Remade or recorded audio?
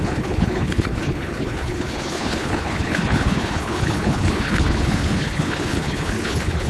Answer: remade